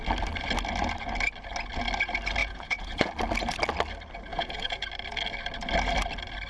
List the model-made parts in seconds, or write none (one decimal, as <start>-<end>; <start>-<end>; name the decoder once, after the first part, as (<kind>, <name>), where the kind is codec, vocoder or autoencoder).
2.4-3.1 (vocoder, Vocos); 4.3-4.9

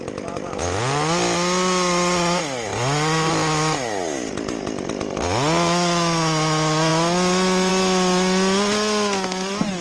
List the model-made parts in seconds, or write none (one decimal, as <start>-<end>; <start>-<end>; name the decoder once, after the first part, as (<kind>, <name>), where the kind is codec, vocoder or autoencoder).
none

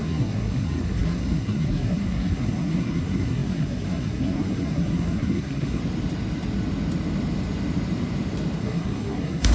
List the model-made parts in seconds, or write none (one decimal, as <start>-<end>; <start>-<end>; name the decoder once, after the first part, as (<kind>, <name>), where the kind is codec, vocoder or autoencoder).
0.0-5.8 (codec, SNAC); 8.6-9.5

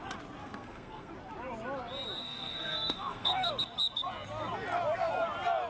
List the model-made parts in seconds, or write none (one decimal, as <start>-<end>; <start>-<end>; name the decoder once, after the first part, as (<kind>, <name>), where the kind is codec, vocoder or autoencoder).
0.4-1.1 (codec, SNAC); 2.2-3.5